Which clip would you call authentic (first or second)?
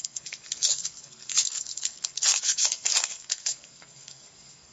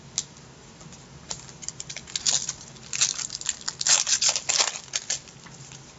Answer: second